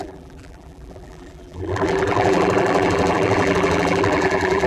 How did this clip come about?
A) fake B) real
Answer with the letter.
A